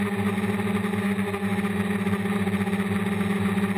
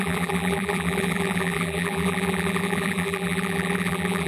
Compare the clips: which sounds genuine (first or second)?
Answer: first